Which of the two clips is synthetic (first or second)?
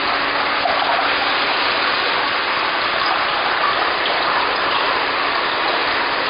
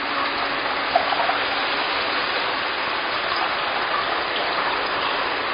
second